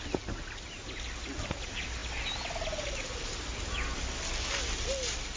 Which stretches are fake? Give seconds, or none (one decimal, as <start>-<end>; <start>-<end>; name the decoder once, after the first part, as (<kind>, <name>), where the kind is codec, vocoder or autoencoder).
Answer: none